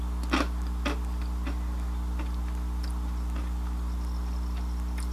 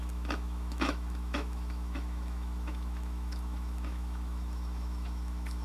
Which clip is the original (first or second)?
first